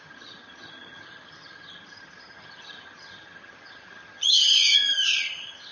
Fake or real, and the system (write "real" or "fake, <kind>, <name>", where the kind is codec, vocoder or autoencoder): fake, vocoder, HiFi-GAN